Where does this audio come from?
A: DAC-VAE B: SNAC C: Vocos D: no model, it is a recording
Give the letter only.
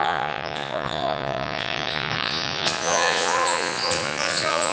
C